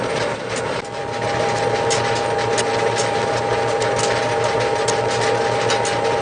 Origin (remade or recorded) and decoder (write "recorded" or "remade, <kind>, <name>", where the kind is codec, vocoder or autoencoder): recorded